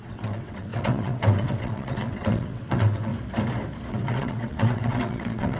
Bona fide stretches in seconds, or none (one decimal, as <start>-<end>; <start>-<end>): 3.1-3.9